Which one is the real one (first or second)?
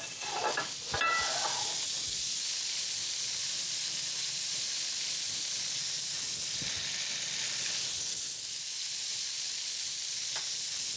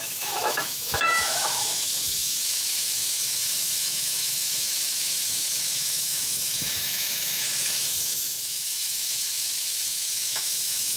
first